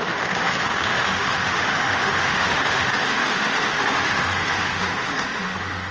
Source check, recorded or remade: remade